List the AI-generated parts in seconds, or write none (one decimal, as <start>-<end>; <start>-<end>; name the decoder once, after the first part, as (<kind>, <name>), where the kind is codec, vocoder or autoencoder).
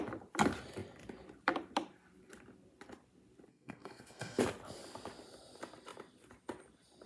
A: 3.5-4.4 (codec, SNAC)